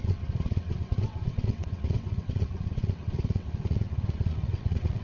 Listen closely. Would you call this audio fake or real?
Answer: fake